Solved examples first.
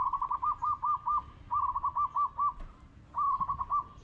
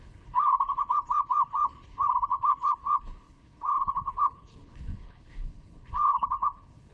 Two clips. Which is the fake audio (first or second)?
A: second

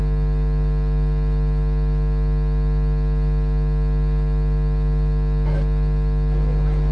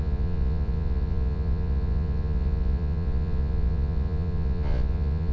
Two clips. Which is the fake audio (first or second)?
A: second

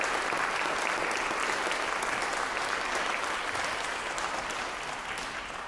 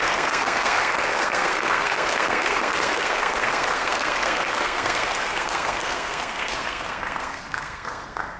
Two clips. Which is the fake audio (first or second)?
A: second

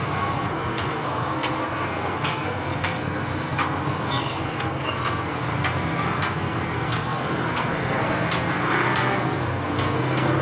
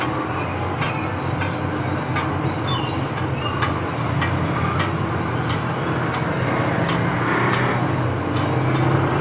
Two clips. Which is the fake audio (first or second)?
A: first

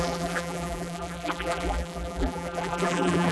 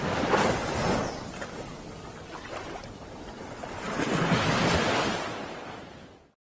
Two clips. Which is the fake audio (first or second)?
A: first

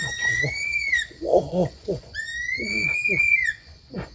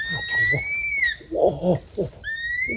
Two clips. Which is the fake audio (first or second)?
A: first